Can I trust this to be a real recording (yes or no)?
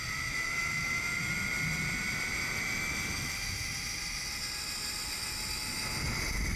yes